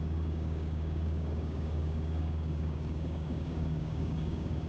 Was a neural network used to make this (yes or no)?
yes